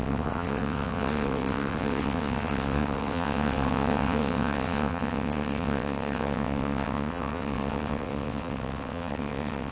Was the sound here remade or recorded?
remade